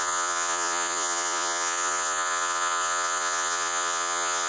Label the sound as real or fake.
fake